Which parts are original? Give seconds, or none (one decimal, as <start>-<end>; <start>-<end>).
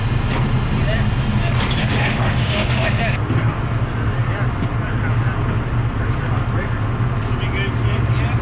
0.0-1.8; 3.0-8.4